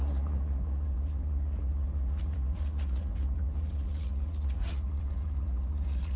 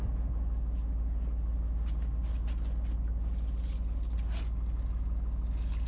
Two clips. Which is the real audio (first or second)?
second